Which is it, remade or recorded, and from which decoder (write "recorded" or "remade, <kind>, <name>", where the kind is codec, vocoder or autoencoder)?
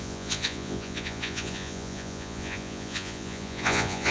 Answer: remade, vocoder, Vocos